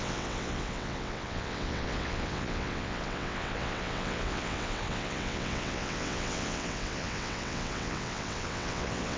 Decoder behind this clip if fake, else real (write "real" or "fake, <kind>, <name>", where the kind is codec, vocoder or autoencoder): fake, vocoder, WaveNeXt